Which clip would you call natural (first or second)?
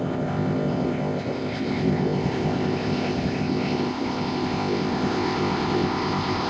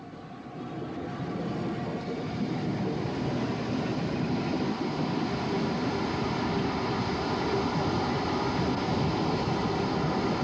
second